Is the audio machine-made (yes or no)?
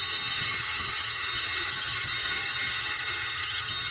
yes